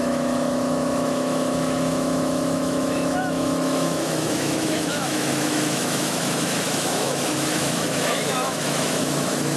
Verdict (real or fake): fake